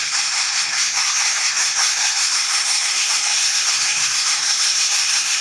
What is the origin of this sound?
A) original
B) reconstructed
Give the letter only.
B